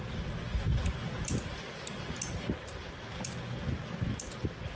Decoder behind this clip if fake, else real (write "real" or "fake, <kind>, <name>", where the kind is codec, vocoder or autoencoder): real